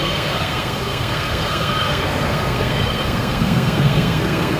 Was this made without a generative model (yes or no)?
no